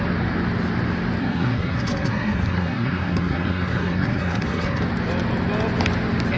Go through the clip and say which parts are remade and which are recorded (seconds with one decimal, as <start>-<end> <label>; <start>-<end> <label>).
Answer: 0.0-1.2 recorded; 1.2-4.8 remade; 4.8-6.4 recorded